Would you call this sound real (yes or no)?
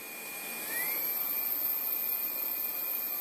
no